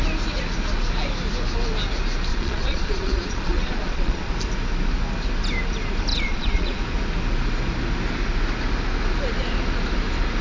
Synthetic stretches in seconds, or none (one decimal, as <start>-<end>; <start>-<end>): 2.3-4.3; 6.1-6.8